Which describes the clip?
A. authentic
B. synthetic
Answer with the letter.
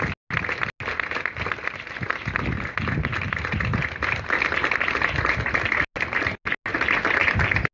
A